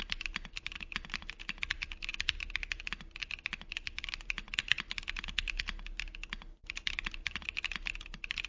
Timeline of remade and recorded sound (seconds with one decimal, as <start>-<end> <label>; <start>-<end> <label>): 0.0-8.5 recorded